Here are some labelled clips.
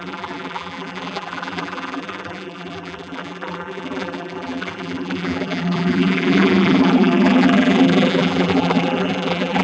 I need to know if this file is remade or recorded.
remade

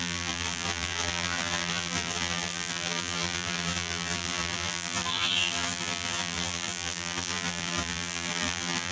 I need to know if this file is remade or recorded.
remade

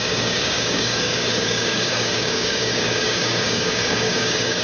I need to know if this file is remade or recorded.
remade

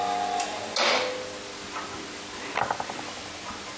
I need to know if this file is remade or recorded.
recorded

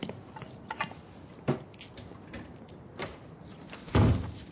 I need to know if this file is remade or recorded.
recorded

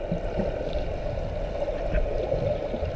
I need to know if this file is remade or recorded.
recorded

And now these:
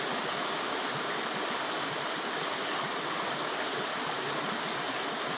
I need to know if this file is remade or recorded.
recorded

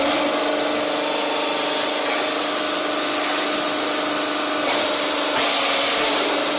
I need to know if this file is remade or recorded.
recorded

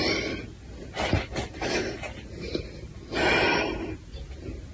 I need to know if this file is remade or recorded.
recorded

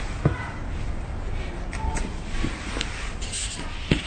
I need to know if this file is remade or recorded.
recorded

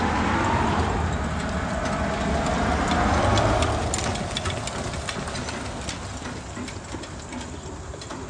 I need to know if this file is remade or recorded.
recorded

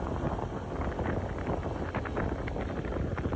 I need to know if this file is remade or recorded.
recorded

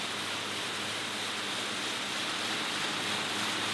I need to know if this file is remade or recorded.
recorded